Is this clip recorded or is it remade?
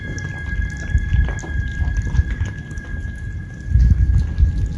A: recorded